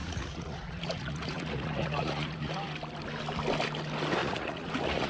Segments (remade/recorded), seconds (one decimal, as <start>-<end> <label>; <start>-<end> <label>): 0.0-2.5 remade; 2.5-4.2 recorded; 4.2-5.1 remade